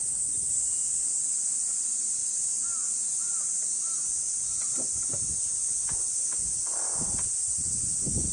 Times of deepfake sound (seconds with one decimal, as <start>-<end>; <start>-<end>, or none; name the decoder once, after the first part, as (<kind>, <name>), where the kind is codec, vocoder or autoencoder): 0.0-0.8 (vocoder, Vocos); 1.4-2.2; 6.2-8.3